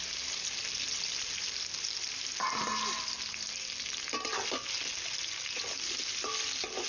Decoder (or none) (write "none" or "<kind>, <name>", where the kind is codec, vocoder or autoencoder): none